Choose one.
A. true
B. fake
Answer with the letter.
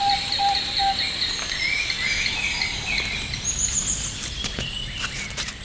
A